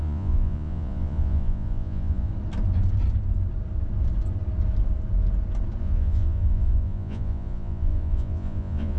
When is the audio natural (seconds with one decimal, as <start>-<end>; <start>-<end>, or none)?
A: 2.3-5.8